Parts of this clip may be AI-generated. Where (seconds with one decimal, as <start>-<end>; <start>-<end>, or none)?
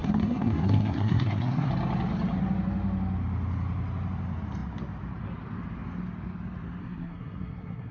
0.0-1.7; 6.8-7.9